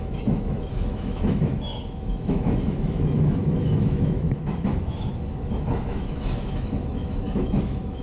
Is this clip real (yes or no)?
no